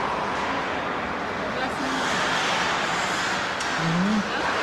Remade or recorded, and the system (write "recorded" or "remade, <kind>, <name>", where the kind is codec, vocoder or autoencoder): recorded